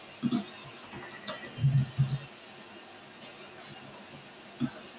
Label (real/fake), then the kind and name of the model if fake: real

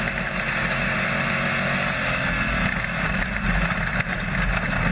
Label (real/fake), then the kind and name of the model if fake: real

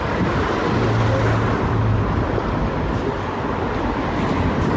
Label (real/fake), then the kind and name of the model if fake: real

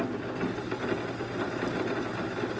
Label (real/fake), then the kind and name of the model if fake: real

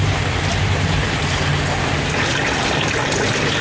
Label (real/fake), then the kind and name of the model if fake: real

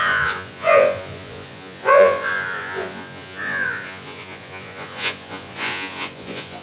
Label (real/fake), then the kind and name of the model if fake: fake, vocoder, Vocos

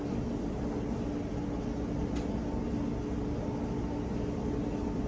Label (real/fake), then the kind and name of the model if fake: real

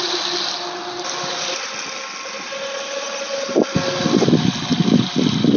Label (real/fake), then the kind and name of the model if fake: real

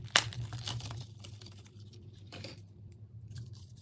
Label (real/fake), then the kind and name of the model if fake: fake, vocoder, BigVGAN v2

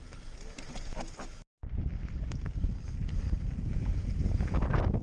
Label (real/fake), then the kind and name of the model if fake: real